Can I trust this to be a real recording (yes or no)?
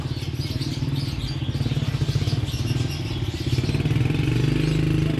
yes